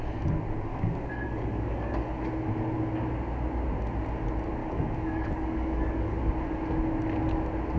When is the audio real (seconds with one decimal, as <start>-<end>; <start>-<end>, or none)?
0.0-0.7; 2.2-4.6; 6.2-7.8